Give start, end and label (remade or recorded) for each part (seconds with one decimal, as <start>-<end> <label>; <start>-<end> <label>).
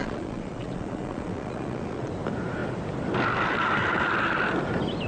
0.0-2.1 remade; 2.1-5.1 recorded